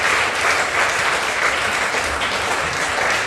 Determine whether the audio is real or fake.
real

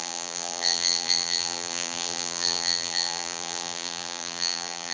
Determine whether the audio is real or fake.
fake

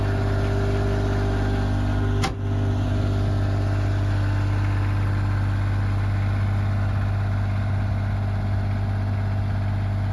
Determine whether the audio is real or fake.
real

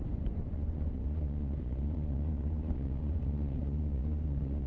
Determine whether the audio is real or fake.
fake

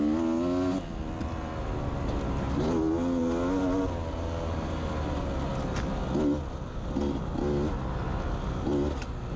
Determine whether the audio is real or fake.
real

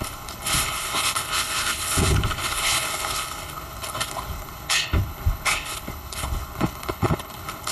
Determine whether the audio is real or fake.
fake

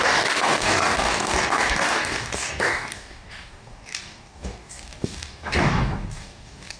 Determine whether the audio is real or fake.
fake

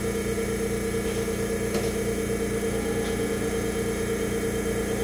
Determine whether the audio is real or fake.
real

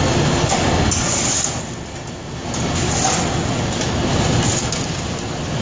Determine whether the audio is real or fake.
real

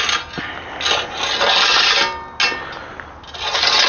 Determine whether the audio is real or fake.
real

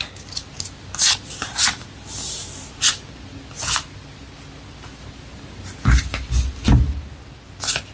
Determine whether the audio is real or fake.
real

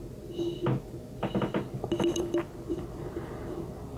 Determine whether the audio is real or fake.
real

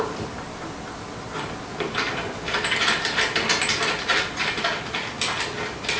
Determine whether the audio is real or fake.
real